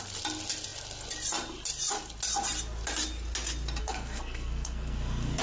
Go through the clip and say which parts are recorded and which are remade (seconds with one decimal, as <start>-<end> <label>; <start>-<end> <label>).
0.0-3.8 recorded; 3.8-5.4 remade